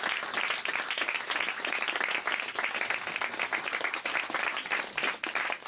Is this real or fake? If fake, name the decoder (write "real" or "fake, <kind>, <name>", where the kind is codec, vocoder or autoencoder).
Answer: real